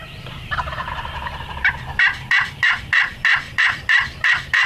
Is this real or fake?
fake